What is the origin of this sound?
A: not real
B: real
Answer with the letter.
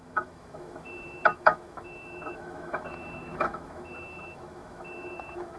A